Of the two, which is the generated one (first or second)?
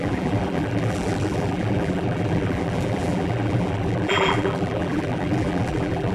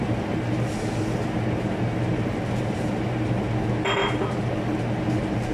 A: first